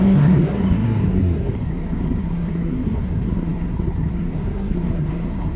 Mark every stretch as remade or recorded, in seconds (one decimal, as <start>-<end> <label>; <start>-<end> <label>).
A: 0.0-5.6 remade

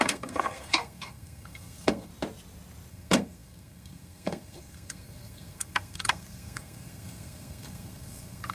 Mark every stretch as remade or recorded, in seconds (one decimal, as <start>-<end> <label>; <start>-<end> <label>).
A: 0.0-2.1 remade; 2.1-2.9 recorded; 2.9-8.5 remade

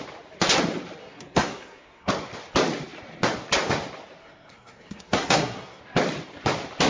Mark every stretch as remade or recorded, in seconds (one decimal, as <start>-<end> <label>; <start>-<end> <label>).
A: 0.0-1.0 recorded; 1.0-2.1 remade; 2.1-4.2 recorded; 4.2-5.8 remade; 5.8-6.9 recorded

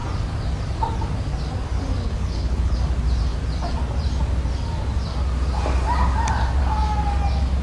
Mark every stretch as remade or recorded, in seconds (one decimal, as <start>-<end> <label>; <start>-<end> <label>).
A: 0.0-2.0 recorded; 2.0-2.8 remade; 2.8-7.6 recorded

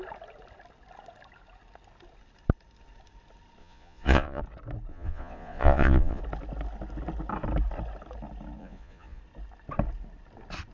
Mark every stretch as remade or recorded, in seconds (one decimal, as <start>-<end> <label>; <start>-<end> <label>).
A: 0.0-3.6 recorded; 3.6-4.4 remade; 4.4-4.9 recorded; 4.9-6.2 remade; 6.2-8.6 recorded; 8.6-9.2 remade; 9.2-10.7 recorded

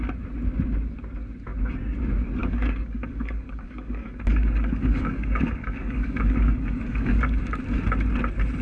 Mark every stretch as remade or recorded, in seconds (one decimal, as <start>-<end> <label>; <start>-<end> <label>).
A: 0.0-2.4 recorded; 2.4-7.4 remade; 7.4-8.6 recorded

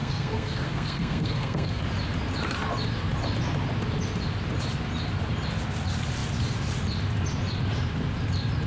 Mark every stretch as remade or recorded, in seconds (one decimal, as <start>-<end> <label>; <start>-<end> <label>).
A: 0.0-1.8 remade; 1.8-8.7 recorded